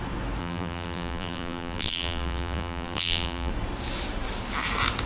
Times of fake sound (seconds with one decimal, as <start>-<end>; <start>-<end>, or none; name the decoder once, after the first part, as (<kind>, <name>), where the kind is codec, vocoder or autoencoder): 0.4-3.5 (vocoder, BigVGAN v2)